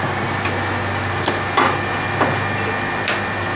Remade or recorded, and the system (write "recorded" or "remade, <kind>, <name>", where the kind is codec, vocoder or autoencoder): recorded